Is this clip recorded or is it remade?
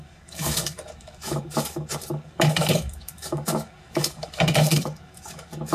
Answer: remade